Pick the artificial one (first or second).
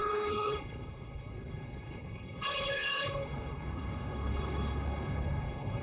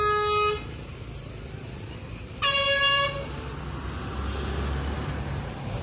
first